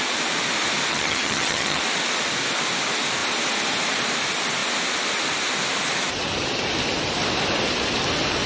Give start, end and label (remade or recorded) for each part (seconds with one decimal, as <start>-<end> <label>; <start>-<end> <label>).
0.0-0.9 recorded; 0.9-1.8 remade; 1.8-8.5 recorded